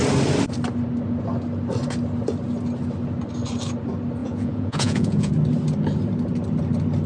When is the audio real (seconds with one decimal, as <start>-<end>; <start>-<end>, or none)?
0.0-4.2; 5.3-7.1